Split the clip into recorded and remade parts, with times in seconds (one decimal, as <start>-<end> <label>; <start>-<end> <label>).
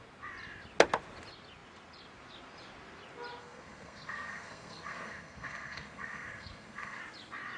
0.0-3.4 recorded; 3.4-7.0 remade; 7.0-7.6 recorded